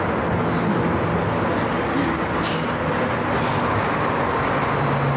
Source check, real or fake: real